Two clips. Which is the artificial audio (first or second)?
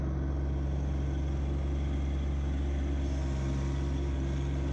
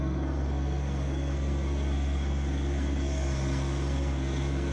second